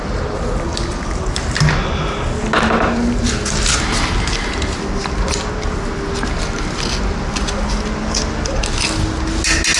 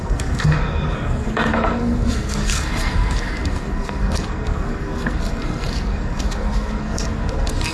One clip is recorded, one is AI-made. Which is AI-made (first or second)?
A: second